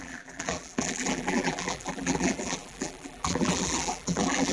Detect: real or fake fake